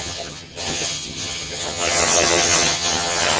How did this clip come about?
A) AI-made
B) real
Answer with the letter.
A